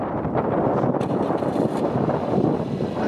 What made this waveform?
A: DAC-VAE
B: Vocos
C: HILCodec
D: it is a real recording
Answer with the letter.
D